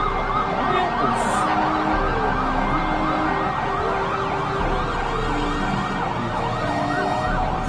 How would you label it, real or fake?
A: real